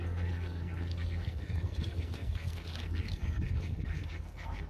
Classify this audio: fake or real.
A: fake